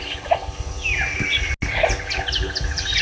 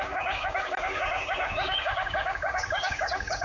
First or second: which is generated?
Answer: second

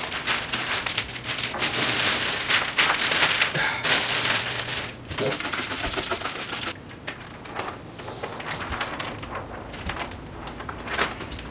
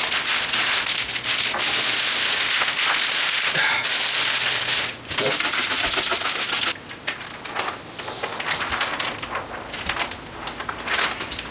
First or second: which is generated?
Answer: first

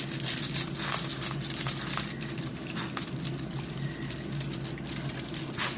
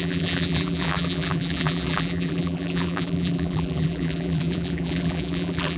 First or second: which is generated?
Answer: second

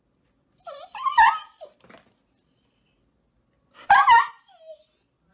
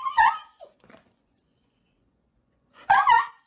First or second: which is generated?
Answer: second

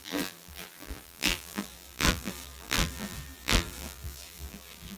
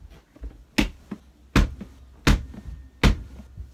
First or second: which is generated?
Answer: first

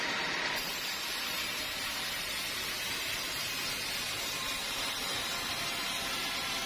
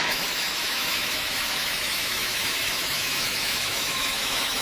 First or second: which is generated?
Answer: second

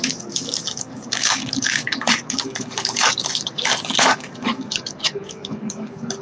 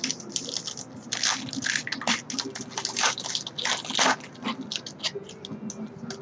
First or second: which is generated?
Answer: first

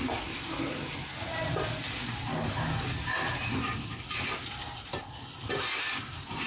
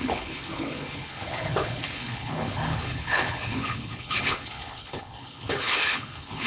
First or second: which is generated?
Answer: second